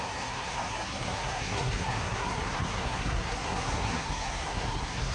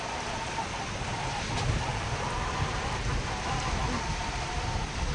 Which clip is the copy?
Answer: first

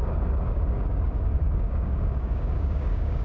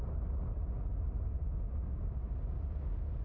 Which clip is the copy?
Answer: first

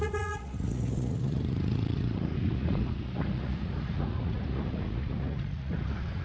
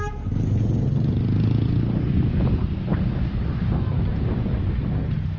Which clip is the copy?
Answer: first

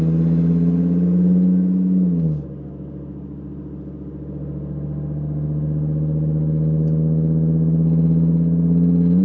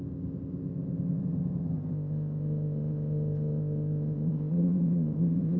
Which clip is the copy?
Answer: second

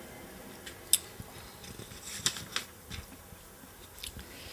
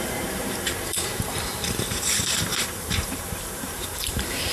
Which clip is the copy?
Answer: second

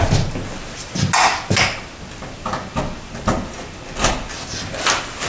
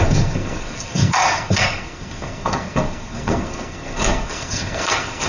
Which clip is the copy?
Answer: second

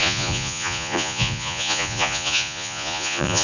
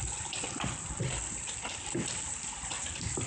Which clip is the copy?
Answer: first